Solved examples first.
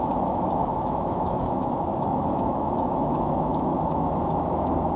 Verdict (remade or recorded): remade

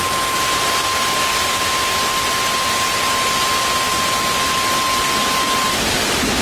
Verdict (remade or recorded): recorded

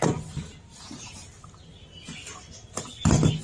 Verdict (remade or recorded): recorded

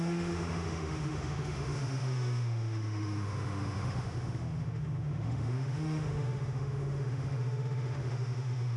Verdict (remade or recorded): remade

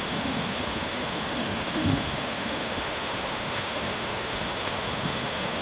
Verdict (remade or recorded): remade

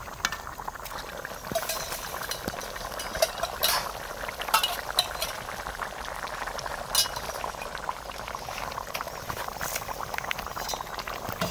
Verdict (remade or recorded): recorded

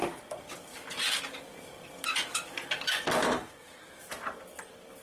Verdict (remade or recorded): recorded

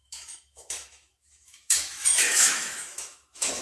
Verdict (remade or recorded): remade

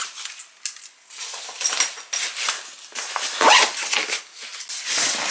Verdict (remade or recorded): recorded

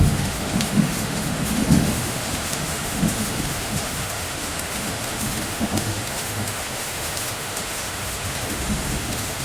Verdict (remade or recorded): remade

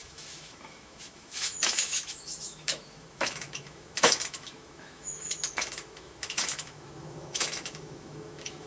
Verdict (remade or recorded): remade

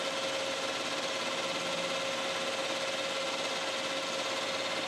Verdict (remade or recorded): recorded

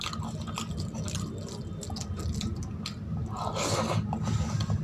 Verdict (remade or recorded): recorded